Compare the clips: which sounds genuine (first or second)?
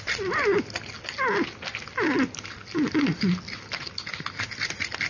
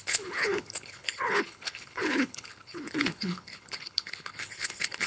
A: first